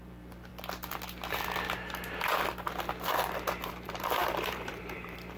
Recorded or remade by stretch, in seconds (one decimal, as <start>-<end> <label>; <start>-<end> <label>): 0.0-0.5 remade; 0.5-3.7 recorded; 3.7-5.4 remade